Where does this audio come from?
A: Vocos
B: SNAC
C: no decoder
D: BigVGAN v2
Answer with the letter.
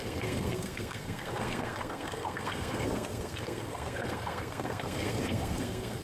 B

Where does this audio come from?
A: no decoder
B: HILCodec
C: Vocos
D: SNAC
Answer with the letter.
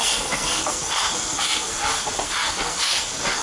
D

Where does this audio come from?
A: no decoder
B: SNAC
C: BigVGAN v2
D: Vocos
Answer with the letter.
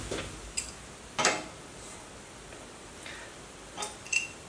A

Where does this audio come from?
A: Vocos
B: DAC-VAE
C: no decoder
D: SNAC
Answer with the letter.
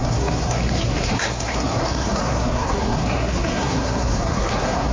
D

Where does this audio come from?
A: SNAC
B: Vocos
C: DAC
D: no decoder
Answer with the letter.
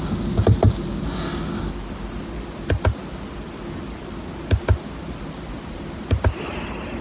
D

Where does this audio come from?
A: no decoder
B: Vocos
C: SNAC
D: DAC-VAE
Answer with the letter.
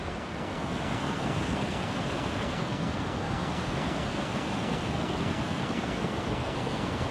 C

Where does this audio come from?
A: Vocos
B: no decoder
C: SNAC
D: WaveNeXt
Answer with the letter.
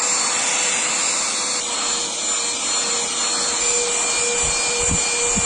B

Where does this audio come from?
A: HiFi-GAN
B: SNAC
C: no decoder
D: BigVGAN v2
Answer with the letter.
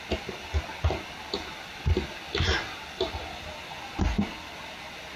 C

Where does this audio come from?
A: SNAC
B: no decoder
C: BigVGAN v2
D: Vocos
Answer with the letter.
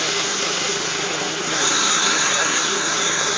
A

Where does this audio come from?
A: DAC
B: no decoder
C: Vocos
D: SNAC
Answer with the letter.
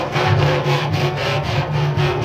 D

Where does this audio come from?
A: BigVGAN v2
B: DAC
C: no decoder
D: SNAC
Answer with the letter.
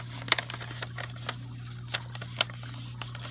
C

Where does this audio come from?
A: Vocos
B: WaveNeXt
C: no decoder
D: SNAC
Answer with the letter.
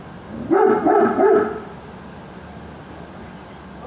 C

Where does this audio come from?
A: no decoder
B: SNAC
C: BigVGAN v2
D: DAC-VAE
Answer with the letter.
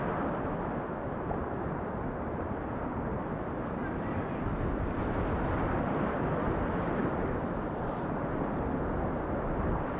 A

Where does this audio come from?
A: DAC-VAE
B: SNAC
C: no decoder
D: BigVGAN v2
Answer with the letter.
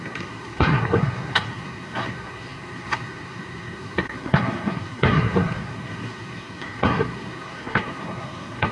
B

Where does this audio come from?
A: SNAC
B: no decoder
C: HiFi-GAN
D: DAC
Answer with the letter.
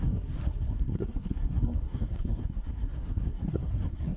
A